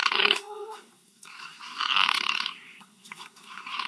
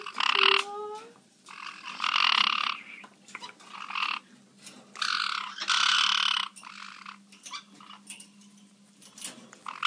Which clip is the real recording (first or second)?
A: second